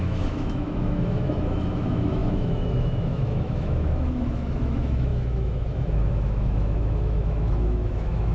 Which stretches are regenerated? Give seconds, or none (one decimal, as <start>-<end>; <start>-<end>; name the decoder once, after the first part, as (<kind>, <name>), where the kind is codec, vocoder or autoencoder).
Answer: 0.0-8.3 (autoencoder, DAC-VAE)